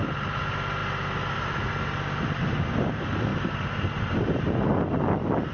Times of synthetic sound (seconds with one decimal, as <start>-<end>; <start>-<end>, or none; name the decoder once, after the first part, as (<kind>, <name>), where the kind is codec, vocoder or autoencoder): none